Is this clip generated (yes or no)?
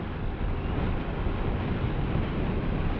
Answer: no